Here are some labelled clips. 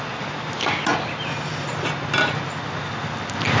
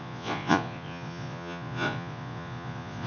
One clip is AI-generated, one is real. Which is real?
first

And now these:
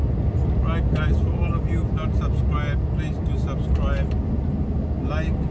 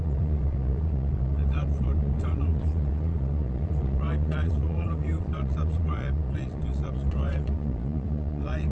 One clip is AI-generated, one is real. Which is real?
first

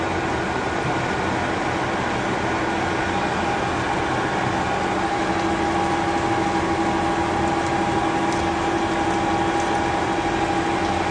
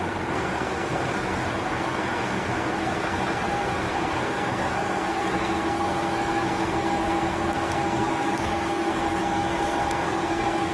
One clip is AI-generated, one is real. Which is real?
first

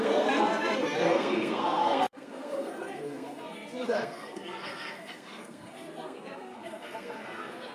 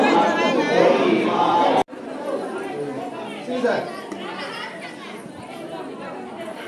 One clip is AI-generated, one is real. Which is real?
second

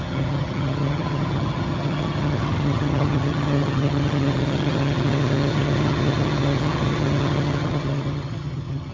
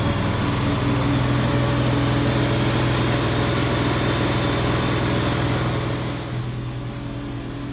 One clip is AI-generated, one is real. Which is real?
second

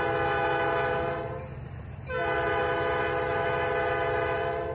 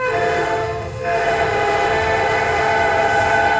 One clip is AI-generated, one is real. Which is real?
first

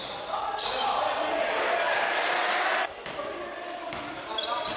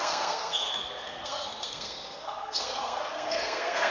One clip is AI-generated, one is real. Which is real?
first